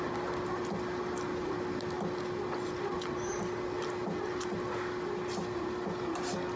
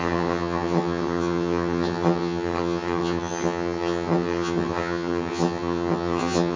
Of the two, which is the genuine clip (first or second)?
first